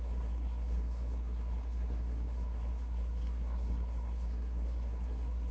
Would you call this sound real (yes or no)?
no